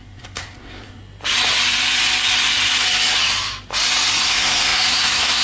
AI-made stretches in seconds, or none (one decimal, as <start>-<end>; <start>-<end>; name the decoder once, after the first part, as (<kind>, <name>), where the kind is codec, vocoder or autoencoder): 0.0-1.0 (codec, SNAC); 4.2-5.4